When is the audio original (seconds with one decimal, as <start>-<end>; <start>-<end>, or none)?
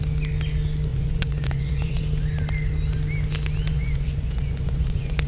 0.0-0.9; 2.0-3.7